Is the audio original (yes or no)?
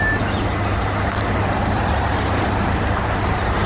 no